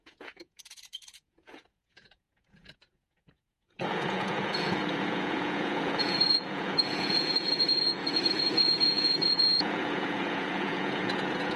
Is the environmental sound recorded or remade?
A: remade